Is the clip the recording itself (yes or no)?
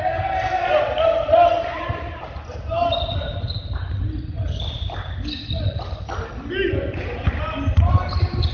yes